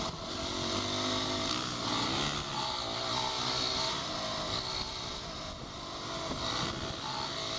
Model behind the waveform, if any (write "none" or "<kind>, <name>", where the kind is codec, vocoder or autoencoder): none